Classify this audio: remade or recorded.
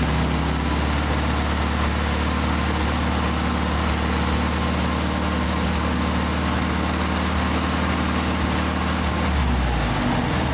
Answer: recorded